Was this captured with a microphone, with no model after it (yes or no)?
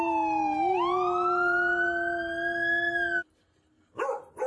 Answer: yes